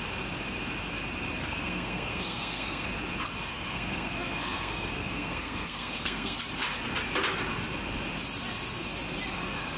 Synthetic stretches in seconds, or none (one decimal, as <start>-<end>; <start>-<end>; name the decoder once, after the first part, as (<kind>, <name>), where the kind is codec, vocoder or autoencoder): 1.4-2.9 (codec, SNAC); 3.5-6.4